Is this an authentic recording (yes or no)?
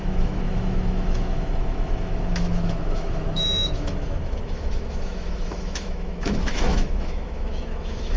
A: no